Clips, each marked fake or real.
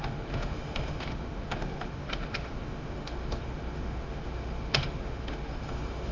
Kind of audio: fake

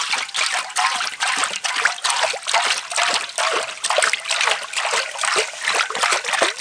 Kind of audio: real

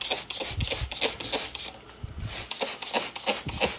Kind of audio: real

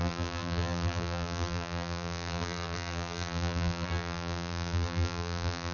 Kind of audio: fake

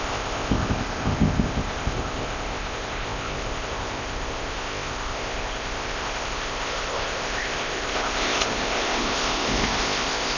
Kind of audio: fake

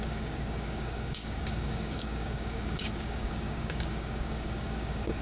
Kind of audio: fake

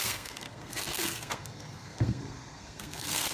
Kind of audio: fake